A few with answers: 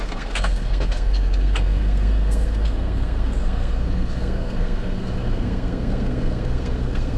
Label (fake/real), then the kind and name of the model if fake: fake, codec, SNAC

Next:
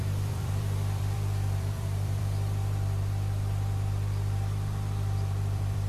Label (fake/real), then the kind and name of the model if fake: fake, vocoder, BigVGAN v2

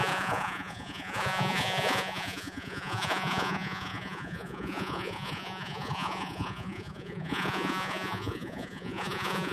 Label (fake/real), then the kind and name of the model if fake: fake, vocoder, Vocos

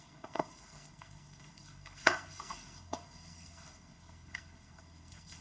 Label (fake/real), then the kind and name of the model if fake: fake, codec, SNAC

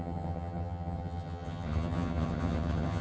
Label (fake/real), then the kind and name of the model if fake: fake, vocoder, HiFi-GAN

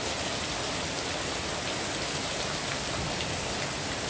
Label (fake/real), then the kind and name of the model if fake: real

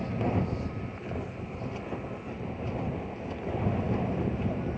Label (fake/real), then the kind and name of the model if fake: real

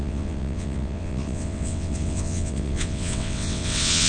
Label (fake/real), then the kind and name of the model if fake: fake, vocoder, WaveNeXt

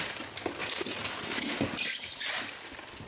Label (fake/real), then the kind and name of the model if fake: real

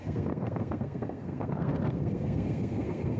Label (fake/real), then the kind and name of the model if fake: fake, codec, SNAC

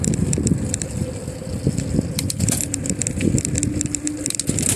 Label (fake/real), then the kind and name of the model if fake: real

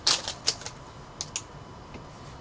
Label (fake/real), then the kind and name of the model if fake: real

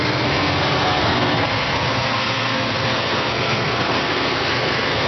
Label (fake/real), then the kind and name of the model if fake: fake, codec, SNAC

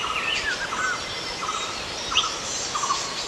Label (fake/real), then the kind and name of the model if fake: real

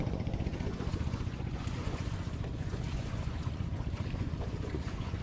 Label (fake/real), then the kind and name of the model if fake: fake, vocoder, Vocos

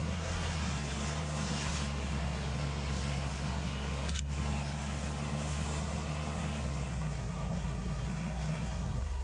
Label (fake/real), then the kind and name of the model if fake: fake, codec, SNAC